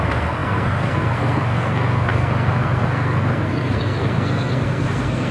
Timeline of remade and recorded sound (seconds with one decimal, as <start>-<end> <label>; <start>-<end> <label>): 0.0-5.3 remade